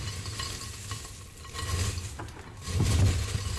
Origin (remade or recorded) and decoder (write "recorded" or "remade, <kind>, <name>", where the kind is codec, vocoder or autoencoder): recorded